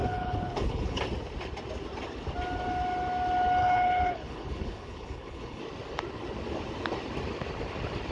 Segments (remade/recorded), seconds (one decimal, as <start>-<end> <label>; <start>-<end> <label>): 0.0-1.0 remade; 1.0-3.6 recorded; 3.6-5.6 remade; 5.6-8.1 recorded